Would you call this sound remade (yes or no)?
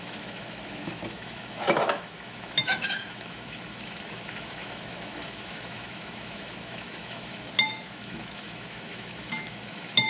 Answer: yes